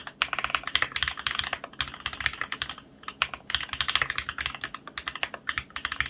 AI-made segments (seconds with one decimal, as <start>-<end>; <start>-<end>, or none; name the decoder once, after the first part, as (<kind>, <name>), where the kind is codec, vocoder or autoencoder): none